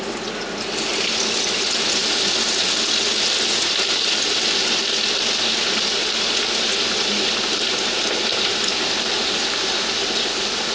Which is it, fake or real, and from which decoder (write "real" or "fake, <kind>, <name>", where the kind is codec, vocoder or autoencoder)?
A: real